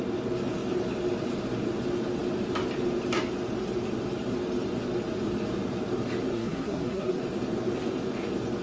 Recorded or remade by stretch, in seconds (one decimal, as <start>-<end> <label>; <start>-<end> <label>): 0.0-6.3 recorded; 6.3-7.2 remade; 7.2-8.6 recorded